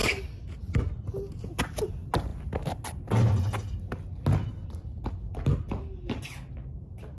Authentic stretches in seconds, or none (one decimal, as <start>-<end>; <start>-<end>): 0.0-7.2